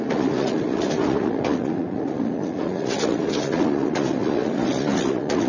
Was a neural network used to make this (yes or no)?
yes